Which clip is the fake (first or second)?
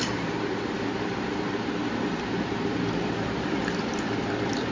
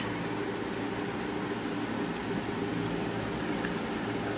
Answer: first